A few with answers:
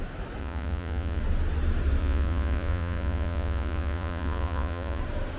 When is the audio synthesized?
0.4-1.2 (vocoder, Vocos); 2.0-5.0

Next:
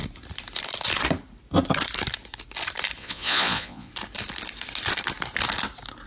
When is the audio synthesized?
3.0-3.9 (vocoder, Vocos)

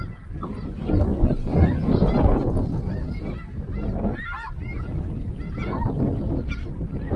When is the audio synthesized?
1.1-1.7 (vocoder, Vocos)

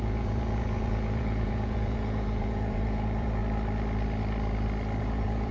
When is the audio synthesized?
0.0-3.4 (vocoder, Vocos); 5.0-5.5